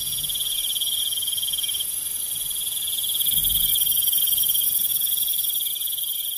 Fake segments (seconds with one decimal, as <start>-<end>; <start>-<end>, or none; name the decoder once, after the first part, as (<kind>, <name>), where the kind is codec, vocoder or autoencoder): none